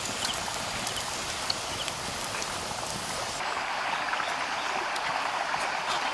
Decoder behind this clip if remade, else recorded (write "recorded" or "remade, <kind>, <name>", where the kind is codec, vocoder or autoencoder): recorded